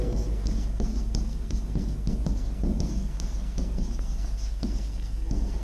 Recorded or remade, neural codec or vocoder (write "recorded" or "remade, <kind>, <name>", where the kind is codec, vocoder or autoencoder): remade, codec, SNAC